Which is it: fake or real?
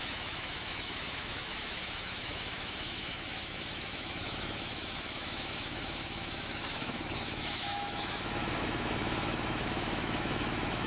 fake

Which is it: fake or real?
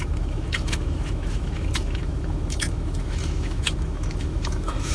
fake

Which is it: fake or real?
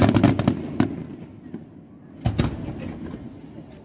real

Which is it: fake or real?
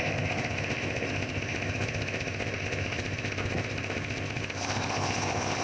fake